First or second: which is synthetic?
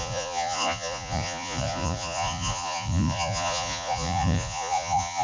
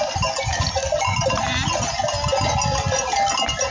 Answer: first